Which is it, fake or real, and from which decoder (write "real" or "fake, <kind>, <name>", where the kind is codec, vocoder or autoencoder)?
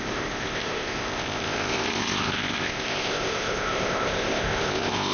fake, codec, ZipCodec